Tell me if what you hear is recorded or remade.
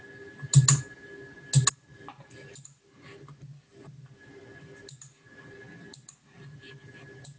recorded